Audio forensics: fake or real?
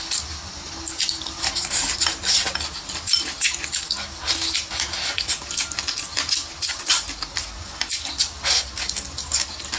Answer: real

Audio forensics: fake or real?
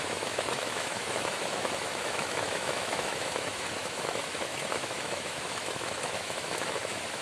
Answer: fake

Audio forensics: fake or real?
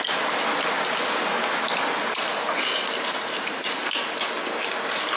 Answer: real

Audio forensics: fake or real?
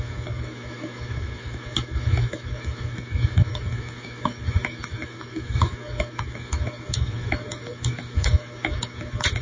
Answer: fake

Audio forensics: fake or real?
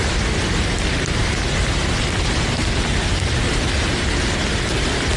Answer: real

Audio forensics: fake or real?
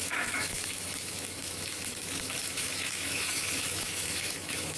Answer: fake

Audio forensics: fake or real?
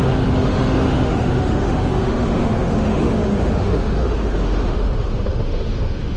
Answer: fake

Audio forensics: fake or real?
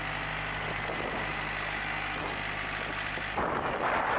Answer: real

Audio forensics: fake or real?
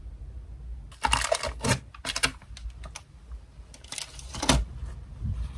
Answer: real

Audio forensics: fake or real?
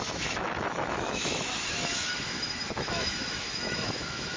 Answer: fake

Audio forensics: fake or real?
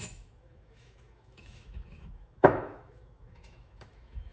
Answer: fake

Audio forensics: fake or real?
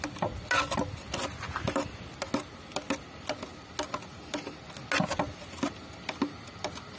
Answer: real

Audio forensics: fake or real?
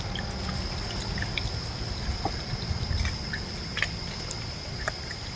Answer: real